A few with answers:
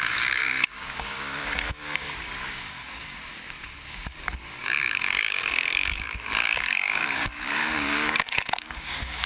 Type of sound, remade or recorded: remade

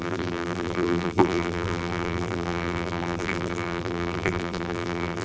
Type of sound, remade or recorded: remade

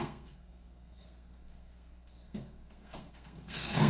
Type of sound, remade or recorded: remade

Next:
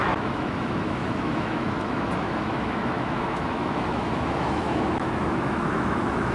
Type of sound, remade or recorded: remade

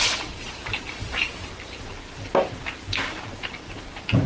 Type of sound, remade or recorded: recorded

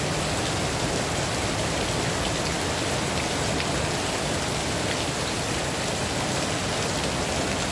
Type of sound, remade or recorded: recorded